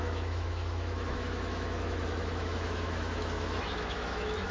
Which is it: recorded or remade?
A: remade